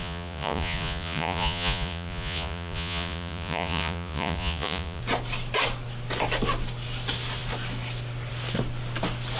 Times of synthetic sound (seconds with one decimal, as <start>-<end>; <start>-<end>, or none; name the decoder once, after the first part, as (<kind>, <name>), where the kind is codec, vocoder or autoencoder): 0.0-5.0 (vocoder, Vocos)